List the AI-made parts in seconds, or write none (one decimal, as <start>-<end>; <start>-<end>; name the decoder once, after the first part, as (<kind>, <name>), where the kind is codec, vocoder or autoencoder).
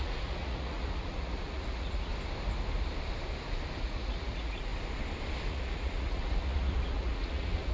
0.0-2.1 (vocoder, Vocos); 3.8-4.7; 5.5-7.7